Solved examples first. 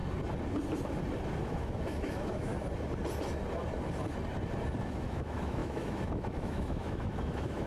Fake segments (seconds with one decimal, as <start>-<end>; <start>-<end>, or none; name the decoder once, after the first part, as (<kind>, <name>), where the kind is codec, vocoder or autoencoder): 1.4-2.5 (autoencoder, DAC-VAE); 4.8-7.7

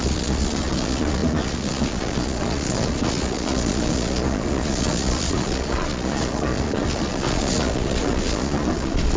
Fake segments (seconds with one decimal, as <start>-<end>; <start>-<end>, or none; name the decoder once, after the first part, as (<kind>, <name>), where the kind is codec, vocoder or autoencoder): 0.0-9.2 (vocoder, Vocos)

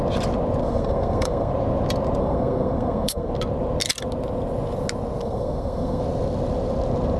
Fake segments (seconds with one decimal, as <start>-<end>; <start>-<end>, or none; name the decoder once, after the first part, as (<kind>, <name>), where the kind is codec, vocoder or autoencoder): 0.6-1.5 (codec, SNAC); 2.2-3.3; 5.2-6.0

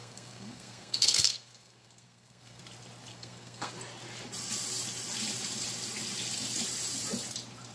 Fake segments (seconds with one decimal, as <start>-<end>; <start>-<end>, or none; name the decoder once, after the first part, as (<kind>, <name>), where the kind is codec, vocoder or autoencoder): 0.0-2.6 (codec, SNAC); 3.1-3.7

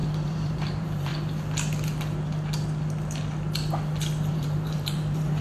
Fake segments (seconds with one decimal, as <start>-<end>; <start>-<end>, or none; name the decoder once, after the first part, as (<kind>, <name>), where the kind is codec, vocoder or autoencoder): 0.0-1.1 (vocoder, BigVGAN v2); 4.3-5.4

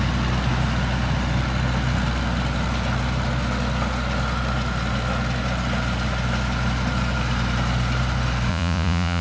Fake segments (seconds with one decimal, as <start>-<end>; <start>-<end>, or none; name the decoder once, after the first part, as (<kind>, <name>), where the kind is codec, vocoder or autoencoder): 8.5-9.2 (vocoder, Vocos)

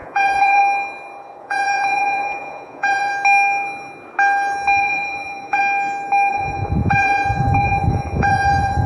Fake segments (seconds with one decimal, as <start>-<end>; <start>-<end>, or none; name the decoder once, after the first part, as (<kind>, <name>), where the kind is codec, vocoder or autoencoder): 0.0-0.6 (vocoder, Vocos); 1.4-3.1; 4.8-5.6; 6.3-8.9

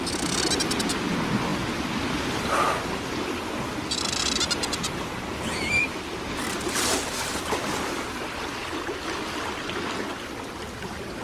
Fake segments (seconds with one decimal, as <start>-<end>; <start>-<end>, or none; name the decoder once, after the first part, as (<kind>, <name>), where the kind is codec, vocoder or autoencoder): none